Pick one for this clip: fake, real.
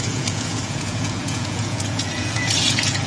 fake